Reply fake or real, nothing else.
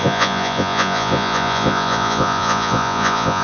fake